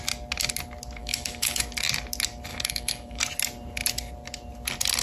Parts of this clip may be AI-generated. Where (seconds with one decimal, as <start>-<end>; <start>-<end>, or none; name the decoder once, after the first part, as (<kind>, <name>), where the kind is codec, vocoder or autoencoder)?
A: 1.0-1.6 (autoencoder, DAC-VAE); 2.5-3.2